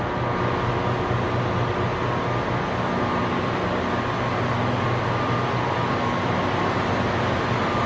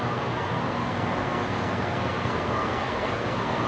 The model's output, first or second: second